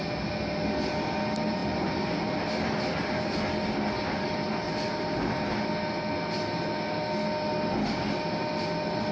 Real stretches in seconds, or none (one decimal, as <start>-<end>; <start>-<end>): 0.0-9.1